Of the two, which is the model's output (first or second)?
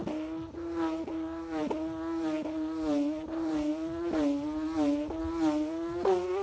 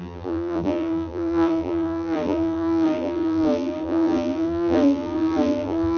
second